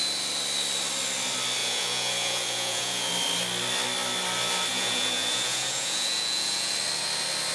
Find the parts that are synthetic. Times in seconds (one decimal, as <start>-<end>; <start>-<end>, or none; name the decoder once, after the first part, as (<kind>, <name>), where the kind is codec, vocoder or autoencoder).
1.6-3.1 (vocoder, Vocos); 4.7-6.7